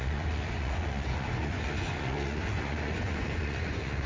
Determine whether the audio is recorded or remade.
remade